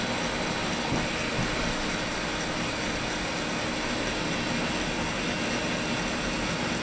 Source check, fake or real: real